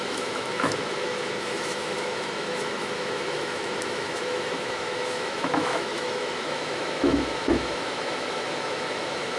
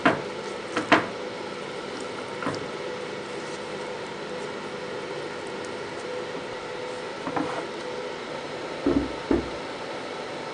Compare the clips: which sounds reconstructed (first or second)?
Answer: first